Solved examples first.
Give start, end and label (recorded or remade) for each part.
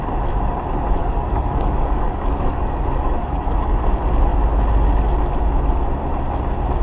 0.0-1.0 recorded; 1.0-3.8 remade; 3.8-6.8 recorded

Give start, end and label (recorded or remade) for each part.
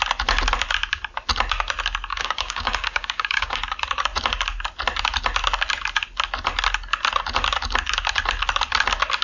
0.0-2.1 recorded; 2.1-3.6 remade; 3.6-9.2 recorded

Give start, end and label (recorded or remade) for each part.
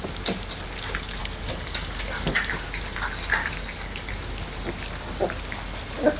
0.0-1.2 recorded; 1.2-2.5 remade; 2.5-3.4 recorded; 3.4-4.1 remade; 4.1-6.2 recorded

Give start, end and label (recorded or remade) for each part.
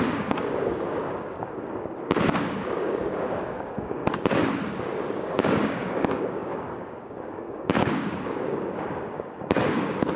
0.0-4.0 remade; 4.0-5.2 recorded; 5.2-10.2 remade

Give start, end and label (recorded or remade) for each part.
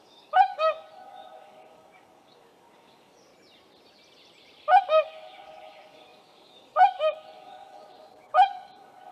0.0-3.3 remade; 3.3-4.8 recorded; 4.8-9.1 remade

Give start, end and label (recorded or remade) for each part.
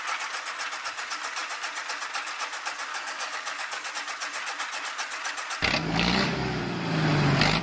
0.0-2.9 recorded; 2.9-3.9 remade; 3.9-5.8 recorded; 5.8-6.6 remade; 6.6-7.6 recorded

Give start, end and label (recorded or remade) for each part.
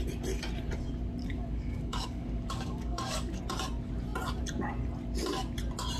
0.0-1.2 recorded; 1.2-3.4 remade; 3.4-6.0 recorded